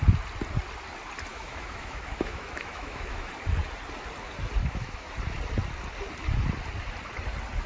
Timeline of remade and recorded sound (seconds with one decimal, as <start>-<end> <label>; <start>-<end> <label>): 0.0-1.3 recorded; 1.3-3.3 remade; 3.3-4.6 recorded; 4.6-5.1 remade; 5.1-7.7 recorded